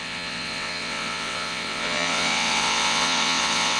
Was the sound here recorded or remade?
remade